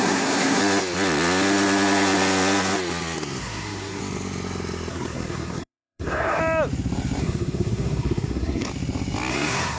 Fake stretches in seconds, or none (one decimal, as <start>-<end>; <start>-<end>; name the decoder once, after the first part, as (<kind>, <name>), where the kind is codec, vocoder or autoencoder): 0.0-0.6 (codec, SNAC); 3.4-4.0; 4.9-6.4; 7.2-8.7; 9.3-9.8